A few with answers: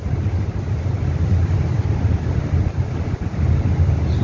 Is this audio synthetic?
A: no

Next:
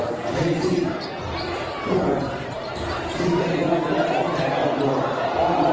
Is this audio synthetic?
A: yes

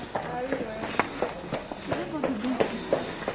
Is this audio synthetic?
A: no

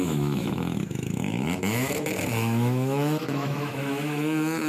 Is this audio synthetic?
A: yes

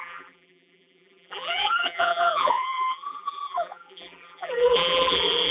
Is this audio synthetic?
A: yes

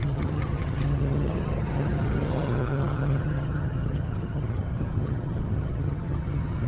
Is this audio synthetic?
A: yes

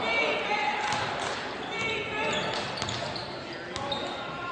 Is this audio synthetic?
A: no